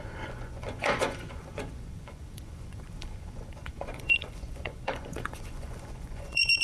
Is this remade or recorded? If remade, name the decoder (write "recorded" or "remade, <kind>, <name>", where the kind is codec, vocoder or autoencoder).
remade, vocoder, Vocos